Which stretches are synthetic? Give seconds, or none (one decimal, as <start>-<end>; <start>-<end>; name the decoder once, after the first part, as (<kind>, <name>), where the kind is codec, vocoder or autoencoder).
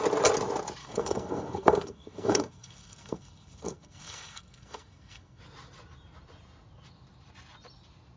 0.8-5.4 (codec, SNAC)